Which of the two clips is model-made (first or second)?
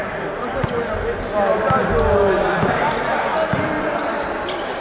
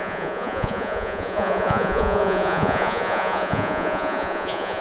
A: second